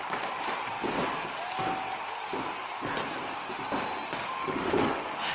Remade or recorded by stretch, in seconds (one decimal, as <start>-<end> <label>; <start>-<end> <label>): 0.0-4.2 recorded; 4.2-5.3 remade